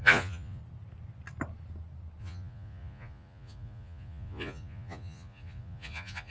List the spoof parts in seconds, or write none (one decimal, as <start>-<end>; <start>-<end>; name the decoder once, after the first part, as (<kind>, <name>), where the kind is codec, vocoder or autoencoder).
0.0-0.6 (vocoder, Vocos); 2.2-6.3